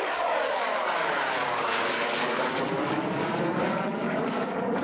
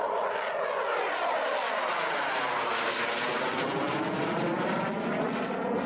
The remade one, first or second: first